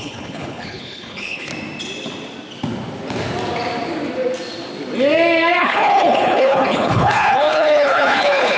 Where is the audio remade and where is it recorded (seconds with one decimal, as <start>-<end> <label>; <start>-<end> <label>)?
0.0-1.5 remade; 1.5-5.6 recorded; 5.6-8.6 remade